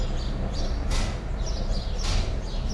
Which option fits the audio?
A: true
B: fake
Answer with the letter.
A